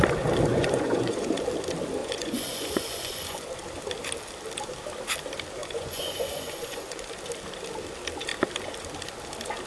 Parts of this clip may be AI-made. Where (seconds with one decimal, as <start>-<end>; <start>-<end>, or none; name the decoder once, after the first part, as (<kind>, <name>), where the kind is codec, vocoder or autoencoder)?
0.5-1.4 (vocoder, Vocos); 2.0-3.5; 5.6-6.9